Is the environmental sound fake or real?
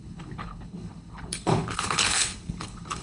fake